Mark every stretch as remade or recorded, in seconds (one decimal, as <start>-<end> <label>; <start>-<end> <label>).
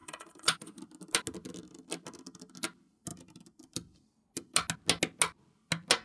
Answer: 0.0-0.8 remade; 0.8-6.0 recorded